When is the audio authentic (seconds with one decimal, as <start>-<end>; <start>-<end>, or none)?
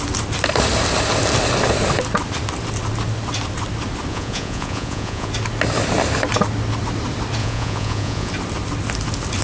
0.0-4.1; 5.3-7.4; 8.3-9.4